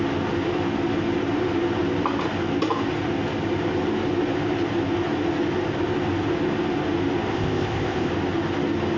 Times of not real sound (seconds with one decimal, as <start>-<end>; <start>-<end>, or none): 7.3-8.1